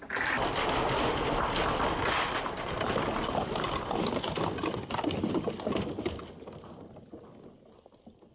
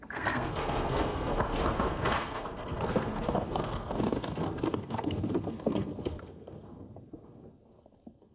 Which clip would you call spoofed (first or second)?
second